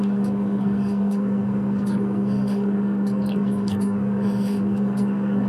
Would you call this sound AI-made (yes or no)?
yes